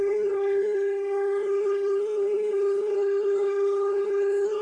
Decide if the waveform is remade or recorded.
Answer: remade